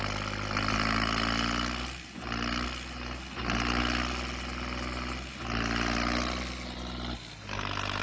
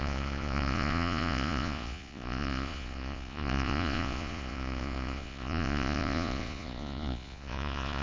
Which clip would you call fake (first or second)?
second